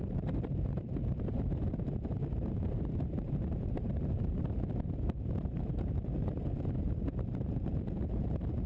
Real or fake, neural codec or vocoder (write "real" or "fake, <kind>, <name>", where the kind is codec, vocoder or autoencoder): fake, vocoder, BigVGAN v2